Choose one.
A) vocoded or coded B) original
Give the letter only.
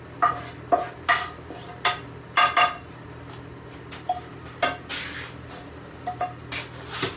B